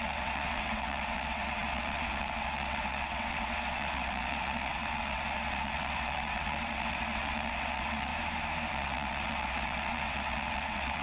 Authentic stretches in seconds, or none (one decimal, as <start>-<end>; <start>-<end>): 8.1-8.7